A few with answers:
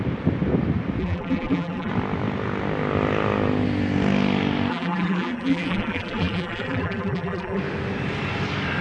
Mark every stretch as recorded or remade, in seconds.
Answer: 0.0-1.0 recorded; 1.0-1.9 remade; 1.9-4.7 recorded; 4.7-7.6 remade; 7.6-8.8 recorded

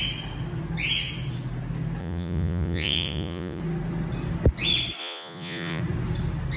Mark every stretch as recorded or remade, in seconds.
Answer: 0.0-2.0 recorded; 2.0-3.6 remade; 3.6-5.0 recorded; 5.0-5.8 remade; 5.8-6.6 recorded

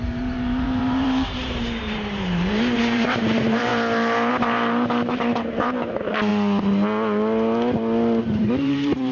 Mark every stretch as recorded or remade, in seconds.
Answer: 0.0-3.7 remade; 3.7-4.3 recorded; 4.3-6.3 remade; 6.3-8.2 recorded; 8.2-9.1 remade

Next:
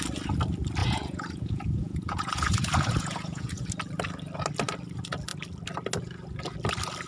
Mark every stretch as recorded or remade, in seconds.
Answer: 0.0-0.8 recorded; 0.8-3.7 remade; 3.7-7.1 recorded